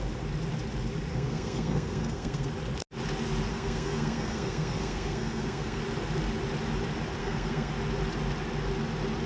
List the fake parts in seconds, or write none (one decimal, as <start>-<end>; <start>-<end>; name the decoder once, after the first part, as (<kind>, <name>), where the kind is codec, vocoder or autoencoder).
1.1-2.5 (codec, SNAC); 3.5-5.8; 7.2-7.7